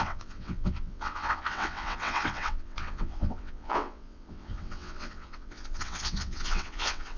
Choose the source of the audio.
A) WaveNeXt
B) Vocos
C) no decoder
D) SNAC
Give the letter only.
A